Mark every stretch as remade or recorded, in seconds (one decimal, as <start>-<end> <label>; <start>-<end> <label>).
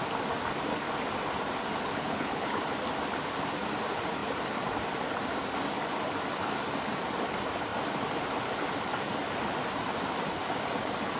0.0-1.9 recorded; 1.9-2.6 remade; 2.6-11.2 recorded